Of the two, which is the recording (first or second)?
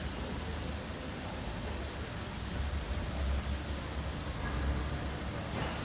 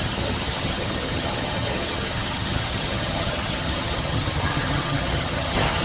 first